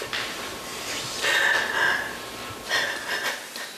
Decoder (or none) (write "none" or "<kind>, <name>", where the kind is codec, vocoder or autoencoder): vocoder, BigVGAN v2